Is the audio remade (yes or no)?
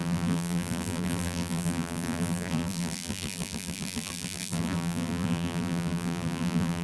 yes